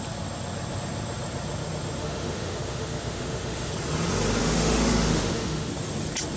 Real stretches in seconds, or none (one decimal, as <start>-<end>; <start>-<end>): 0.0-2.0; 3.7-4.4; 5.7-6.4